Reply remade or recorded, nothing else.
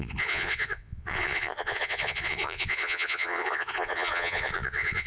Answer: remade